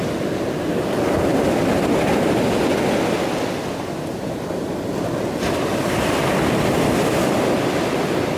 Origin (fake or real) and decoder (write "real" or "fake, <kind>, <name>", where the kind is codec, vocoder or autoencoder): real